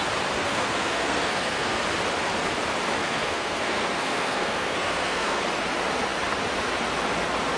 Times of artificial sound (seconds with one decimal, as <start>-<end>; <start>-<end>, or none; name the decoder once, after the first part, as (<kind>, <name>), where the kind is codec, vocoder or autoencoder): 0.4-1.8 (codec, SNAC); 3.0-5.4